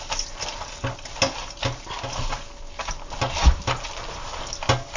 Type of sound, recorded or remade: recorded